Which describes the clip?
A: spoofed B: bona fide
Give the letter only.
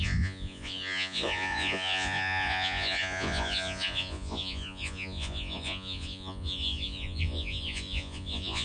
A